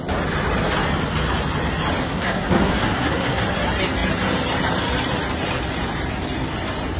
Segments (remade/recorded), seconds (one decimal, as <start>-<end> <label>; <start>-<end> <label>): 0.0-2.0 recorded; 2.0-3.4 remade; 3.4-7.0 recorded